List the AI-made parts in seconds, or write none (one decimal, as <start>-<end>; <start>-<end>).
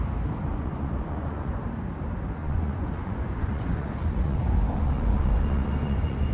0.5-1.5; 2.4-6.3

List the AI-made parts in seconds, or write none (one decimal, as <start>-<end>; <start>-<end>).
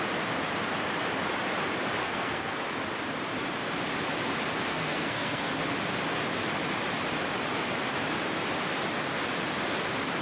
2.0-2.6; 4.7-5.5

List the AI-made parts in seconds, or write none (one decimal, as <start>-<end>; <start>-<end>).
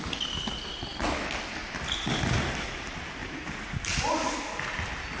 none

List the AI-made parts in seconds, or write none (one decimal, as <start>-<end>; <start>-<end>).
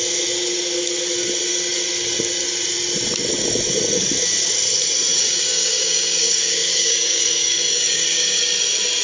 5.1-8.4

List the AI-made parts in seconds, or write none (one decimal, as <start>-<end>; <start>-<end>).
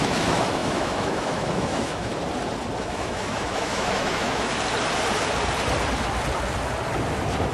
0.0-2.1; 2.8-4.5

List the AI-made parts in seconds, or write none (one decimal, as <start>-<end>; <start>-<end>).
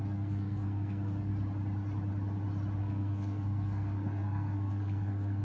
0.0-1.3; 2.8-5.4